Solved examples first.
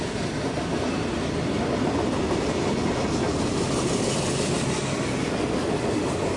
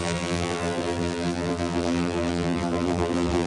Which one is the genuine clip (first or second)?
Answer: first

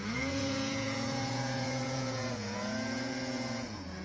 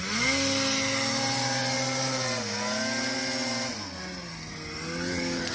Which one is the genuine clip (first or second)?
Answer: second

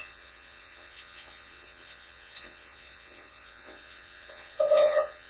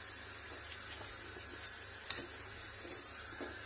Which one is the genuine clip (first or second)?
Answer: second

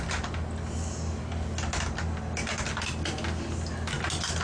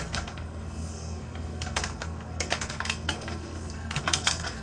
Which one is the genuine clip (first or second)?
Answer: first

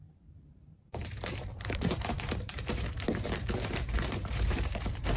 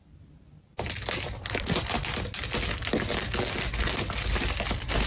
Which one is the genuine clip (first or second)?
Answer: second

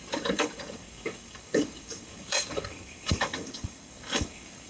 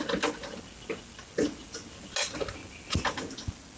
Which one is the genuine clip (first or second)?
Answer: second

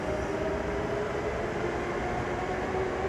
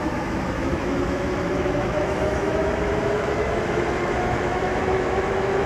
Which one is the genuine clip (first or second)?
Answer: first